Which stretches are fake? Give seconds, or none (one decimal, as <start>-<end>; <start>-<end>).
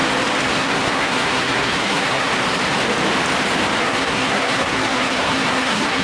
0.6-2.3; 3.8-6.0